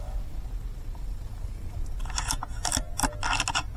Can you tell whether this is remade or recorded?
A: recorded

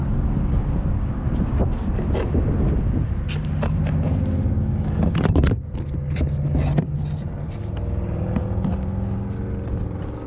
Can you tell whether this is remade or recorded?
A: recorded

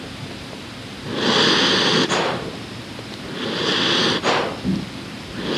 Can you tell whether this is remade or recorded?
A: recorded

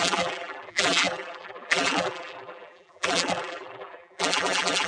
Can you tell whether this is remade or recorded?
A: remade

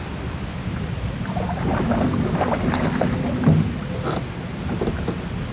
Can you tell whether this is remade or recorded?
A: recorded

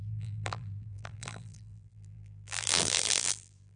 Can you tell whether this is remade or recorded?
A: remade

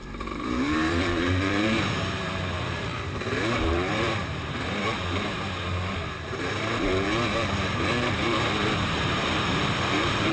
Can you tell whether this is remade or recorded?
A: remade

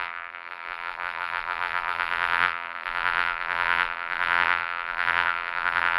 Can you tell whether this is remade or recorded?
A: remade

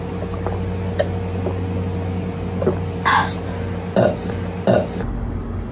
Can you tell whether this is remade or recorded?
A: recorded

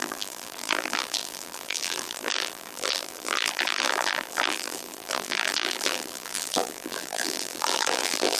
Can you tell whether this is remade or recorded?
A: remade